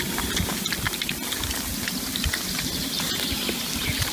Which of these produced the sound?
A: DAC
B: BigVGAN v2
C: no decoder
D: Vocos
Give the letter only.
C